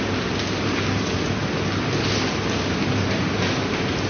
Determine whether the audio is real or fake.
real